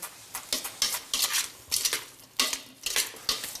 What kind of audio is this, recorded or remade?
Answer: recorded